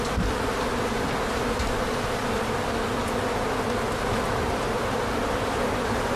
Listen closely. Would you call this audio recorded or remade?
recorded